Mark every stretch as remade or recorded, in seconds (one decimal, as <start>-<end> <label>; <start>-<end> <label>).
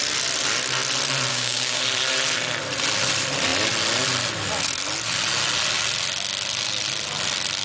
0.0-1.3 recorded; 1.3-1.8 remade; 1.8-7.6 recorded